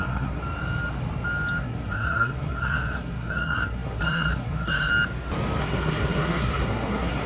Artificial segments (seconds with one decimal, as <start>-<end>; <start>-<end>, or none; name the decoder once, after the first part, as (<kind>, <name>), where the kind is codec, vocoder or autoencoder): 0.0-0.4 (codec, SNAC); 1.6-4.9; 5.6-7.3